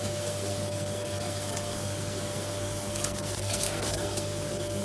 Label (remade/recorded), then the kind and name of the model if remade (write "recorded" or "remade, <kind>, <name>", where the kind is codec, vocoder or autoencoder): remade, codec, SNAC